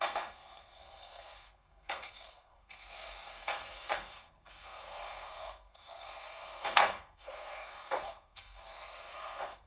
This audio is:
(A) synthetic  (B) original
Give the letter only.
A